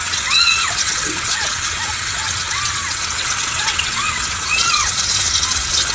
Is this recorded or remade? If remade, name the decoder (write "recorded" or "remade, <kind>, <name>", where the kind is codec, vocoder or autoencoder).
remade, vocoder, WaveNeXt